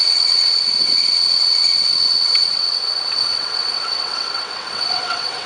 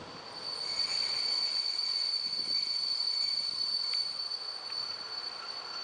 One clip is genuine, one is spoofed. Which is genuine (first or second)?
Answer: second